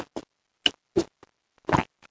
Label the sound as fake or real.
real